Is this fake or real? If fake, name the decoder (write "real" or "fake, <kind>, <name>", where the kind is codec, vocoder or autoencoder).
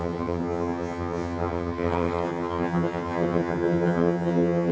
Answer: fake, vocoder, HiFi-GAN